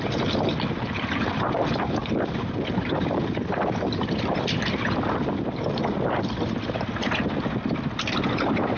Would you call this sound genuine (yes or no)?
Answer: yes